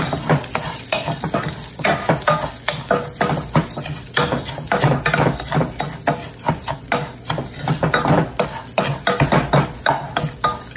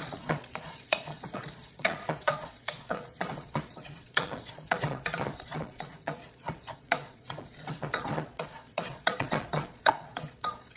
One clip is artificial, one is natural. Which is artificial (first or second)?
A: second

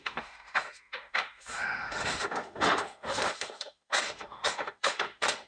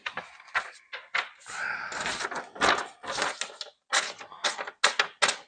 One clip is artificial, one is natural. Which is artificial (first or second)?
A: first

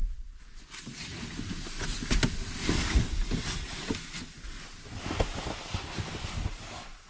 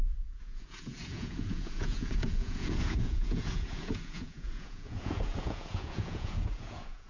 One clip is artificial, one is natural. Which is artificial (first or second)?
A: second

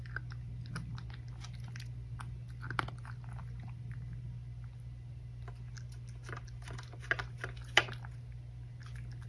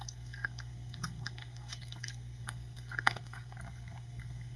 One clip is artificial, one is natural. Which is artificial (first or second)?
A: second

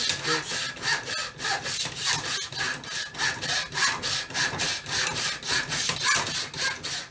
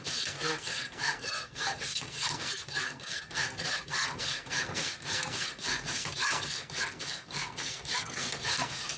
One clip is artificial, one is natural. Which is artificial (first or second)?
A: second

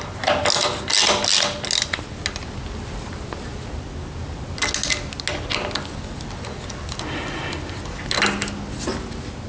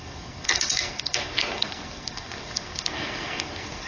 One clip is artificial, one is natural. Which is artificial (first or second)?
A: second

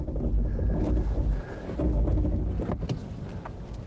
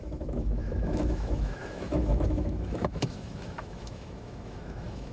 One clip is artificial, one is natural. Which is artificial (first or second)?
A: second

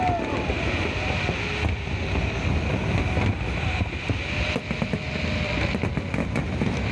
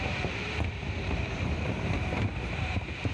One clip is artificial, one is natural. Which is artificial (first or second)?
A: second